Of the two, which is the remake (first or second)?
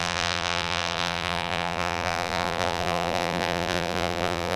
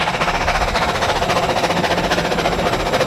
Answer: first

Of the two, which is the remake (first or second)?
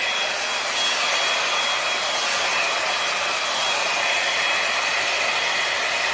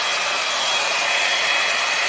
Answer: first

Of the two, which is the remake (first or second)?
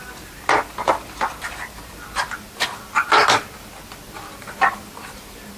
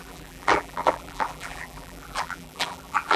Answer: second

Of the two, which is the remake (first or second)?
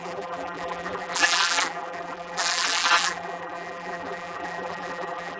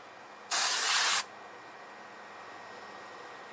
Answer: first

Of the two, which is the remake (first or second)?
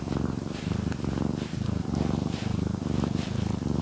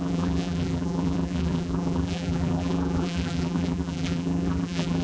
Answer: second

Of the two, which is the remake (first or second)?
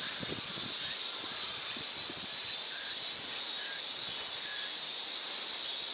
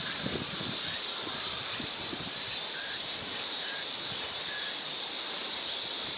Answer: second